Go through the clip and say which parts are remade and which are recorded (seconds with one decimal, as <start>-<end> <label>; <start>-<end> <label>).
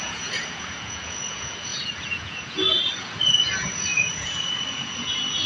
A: 0.0-5.5 remade